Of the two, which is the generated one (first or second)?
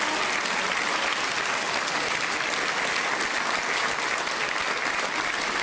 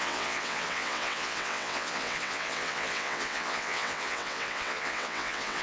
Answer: second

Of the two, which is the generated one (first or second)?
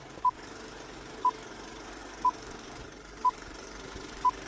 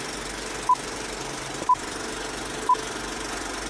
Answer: first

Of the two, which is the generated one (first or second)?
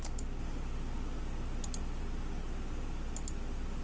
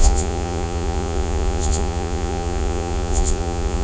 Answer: second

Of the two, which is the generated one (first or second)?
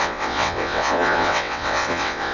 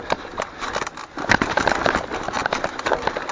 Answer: first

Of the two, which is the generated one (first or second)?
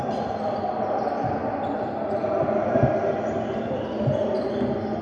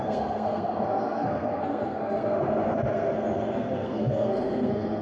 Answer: second